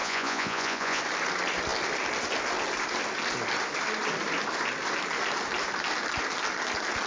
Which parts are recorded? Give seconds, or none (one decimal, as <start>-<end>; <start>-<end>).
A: 1.0-7.1